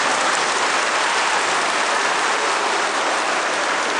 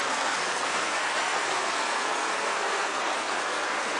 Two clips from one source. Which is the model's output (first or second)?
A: second